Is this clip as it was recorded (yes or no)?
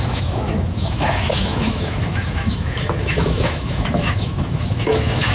no